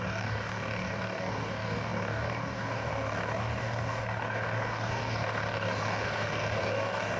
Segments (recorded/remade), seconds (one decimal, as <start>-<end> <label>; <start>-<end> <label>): 0.0-7.2 remade